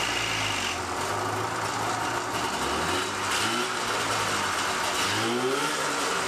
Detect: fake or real real